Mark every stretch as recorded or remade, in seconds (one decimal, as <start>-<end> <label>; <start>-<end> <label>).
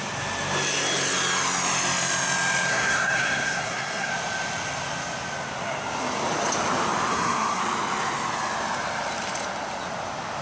0.0-2.7 recorded; 2.7-4.1 remade; 4.1-7.1 recorded; 7.1-7.6 remade; 7.6-10.4 recorded